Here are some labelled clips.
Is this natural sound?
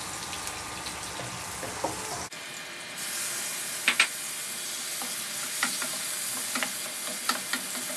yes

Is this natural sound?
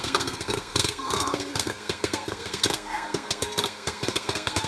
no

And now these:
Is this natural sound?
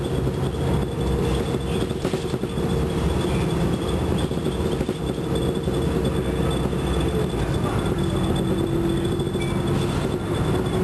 yes